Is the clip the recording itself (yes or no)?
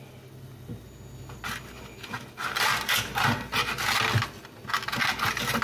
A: yes